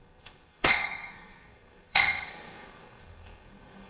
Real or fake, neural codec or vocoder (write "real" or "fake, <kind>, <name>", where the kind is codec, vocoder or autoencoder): fake, codec, SNAC